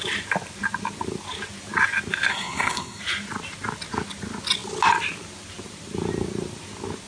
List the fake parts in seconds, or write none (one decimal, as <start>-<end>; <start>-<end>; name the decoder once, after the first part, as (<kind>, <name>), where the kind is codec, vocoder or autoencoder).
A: 2.3-3.0 (codec, SNAC)